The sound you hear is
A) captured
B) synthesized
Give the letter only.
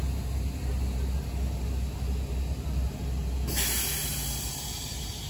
A